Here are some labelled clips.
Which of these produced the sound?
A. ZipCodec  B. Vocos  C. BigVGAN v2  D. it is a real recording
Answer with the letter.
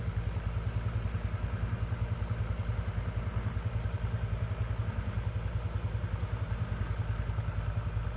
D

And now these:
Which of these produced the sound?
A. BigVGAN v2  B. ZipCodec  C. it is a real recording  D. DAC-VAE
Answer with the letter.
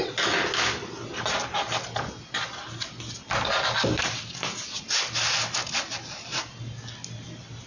C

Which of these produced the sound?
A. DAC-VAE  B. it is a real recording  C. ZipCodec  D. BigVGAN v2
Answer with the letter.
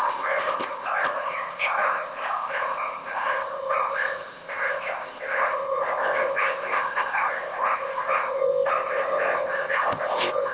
C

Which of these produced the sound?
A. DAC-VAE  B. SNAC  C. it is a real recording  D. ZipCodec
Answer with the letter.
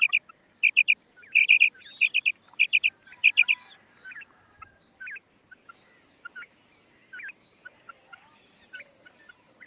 C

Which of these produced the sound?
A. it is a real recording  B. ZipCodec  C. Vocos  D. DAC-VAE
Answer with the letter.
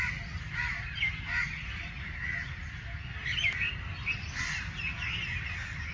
A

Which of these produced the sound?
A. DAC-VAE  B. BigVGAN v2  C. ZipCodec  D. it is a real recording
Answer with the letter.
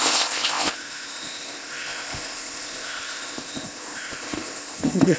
C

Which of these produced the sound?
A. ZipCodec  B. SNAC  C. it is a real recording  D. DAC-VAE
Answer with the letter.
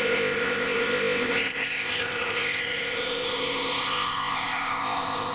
A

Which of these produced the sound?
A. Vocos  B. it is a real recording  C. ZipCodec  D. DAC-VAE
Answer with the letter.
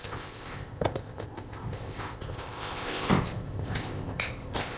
C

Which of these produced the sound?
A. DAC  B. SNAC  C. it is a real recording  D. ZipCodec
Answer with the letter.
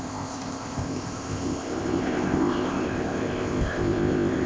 D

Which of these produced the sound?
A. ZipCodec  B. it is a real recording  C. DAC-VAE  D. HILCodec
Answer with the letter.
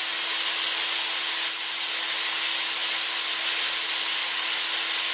B